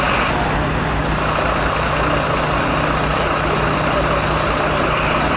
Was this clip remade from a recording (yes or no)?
no